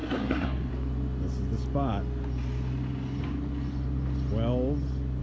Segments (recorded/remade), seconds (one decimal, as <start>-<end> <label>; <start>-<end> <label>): 0.0-0.7 remade; 0.7-5.2 recorded